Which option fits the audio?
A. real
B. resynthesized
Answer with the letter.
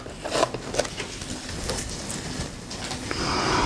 A